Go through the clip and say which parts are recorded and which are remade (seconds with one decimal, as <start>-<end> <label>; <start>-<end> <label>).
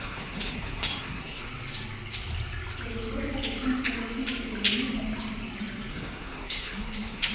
0.0-1.5 remade; 1.5-5.9 recorded; 5.9-7.3 remade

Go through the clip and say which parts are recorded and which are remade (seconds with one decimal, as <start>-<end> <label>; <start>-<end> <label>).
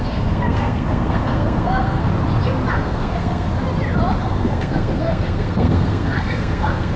0.0-2.1 remade; 2.1-2.7 recorded; 2.7-3.5 remade; 3.5-4.2 recorded; 4.2-7.0 remade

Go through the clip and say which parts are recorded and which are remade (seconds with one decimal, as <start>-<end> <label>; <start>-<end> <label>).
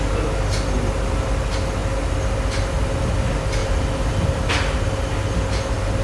0.0-6.0 recorded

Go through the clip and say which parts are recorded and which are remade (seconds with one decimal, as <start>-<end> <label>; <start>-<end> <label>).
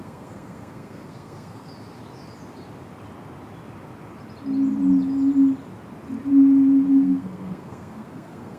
0.0-1.7 remade; 1.7-6.9 recorded; 6.9-8.6 remade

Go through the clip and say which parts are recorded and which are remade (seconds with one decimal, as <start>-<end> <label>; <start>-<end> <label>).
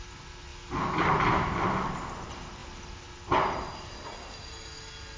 0.0-5.2 recorded